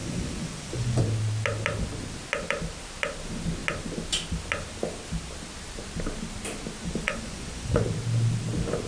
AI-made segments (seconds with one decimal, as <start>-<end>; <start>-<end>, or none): 0.0-1.0; 6.8-7.8